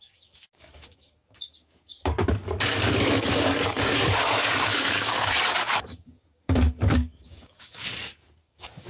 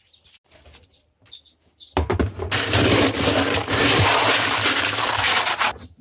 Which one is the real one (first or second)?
second